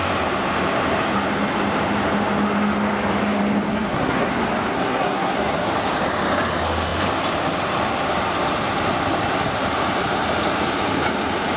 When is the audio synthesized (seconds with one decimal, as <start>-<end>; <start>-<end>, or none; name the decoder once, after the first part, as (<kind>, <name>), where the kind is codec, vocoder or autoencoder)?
3.7-4.3 (codec, SNAC); 4.7-5.7